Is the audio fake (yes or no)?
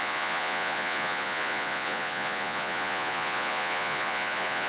yes